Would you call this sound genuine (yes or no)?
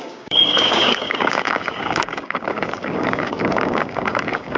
no